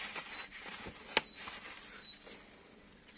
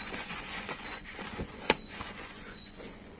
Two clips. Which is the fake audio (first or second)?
second